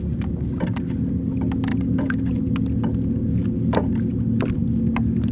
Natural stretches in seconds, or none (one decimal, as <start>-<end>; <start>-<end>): 0.0-1.7; 2.5-3.2; 3.8-5.3